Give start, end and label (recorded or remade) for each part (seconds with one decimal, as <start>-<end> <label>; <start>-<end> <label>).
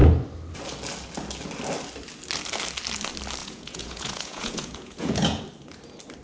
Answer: 0.0-3.4 recorded; 3.4-5.4 remade; 5.4-6.2 recorded